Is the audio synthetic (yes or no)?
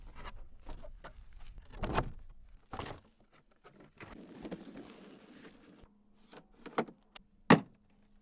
no